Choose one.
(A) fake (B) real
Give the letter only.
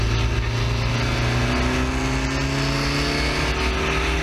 B